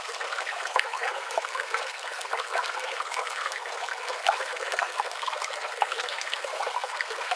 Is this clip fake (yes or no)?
yes